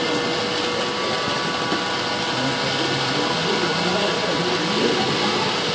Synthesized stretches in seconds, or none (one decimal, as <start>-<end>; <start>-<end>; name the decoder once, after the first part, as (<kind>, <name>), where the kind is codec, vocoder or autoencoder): none